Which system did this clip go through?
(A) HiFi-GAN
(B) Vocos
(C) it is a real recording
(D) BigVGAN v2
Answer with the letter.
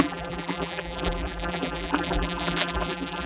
D